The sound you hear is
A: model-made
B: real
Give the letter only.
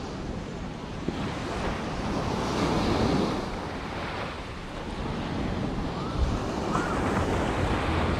B